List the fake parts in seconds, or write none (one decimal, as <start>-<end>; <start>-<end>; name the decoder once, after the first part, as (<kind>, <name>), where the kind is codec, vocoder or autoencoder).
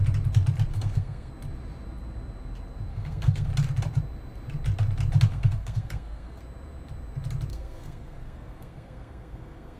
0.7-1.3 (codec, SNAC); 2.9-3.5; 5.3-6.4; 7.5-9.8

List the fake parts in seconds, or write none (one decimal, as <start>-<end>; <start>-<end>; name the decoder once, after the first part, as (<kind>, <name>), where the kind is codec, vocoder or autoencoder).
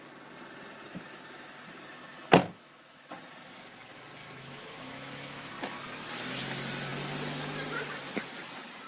2.4-3.1 (autoencoder, DAC-VAE); 4.2-5.5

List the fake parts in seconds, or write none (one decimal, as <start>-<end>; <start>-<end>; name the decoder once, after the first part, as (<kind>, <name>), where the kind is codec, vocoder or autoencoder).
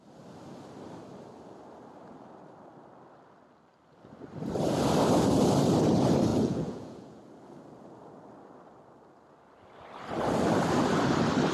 6.3-7.2 (vocoder, Vocos)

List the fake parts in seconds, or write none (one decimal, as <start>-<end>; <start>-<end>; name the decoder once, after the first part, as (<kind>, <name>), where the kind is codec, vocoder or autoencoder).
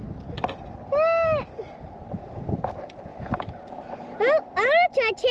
none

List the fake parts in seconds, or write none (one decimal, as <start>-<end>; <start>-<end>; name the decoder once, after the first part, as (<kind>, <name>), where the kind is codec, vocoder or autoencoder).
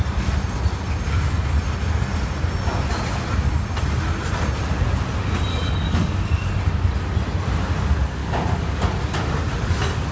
5.5-6.5 (codec, DAC); 8.2-8.8